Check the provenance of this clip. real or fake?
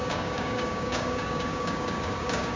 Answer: fake